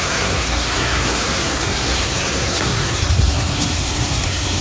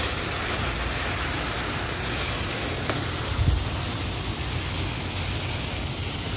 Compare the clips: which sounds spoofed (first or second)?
first